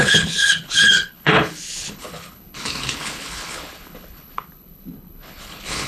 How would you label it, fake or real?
fake